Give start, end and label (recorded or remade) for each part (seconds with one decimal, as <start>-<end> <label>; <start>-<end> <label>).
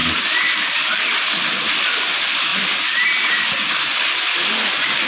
0.0-2.5 recorded; 2.5-3.4 remade; 3.4-5.1 recorded